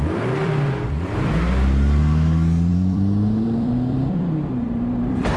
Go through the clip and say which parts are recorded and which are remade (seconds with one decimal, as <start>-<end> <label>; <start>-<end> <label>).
0.0-0.4 recorded; 0.4-1.3 remade; 1.3-2.7 recorded; 2.7-5.4 remade